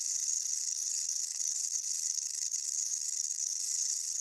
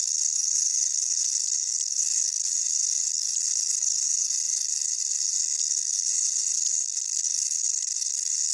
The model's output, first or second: second